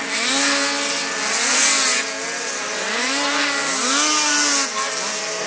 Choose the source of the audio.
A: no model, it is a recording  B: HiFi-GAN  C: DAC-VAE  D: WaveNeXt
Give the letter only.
A